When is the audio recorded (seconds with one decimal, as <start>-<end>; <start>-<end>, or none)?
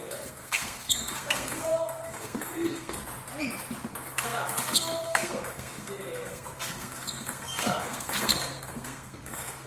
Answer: 3.0-3.9